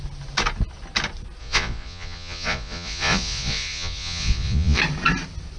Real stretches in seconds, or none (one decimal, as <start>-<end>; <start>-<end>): 0.0-1.4; 4.8-5.6